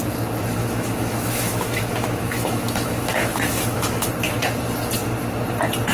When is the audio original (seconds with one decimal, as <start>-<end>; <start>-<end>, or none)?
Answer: 0.0-0.6; 4.1-5.9